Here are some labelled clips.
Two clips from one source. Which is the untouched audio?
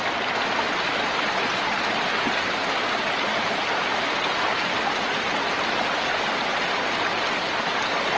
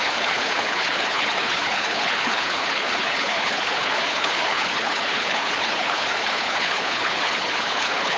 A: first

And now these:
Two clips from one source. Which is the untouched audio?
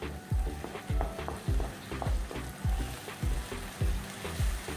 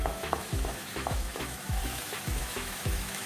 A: first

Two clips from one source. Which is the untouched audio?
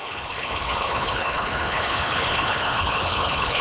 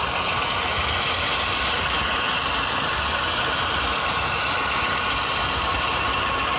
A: second